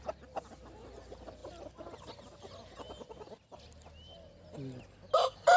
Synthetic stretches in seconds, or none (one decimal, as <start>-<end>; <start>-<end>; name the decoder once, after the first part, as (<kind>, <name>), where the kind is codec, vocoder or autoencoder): none